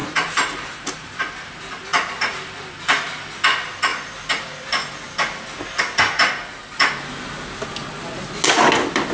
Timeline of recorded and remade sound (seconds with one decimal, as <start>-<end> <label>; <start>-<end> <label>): 0.0-1.2 remade; 1.2-9.1 recorded